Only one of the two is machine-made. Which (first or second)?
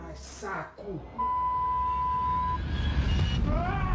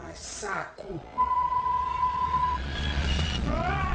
second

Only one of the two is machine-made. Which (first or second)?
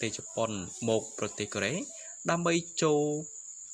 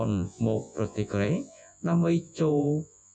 second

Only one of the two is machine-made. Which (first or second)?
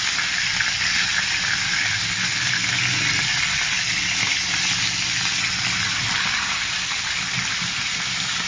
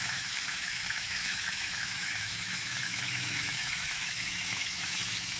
second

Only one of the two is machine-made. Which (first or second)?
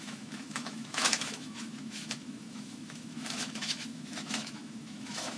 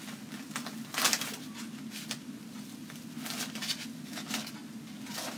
first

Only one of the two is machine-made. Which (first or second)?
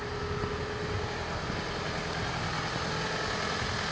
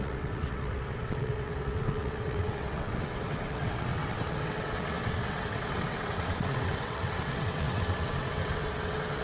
second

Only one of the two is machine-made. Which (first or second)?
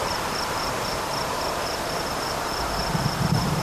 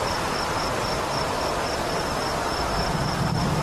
first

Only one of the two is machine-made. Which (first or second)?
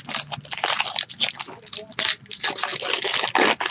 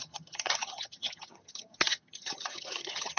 second